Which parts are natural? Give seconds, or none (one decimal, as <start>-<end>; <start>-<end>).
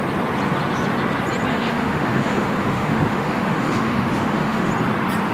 0.0-1.5; 4.7-5.3